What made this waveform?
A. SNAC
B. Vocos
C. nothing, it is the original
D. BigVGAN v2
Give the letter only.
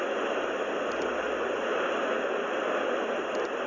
C